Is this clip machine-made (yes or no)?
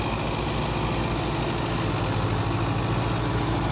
no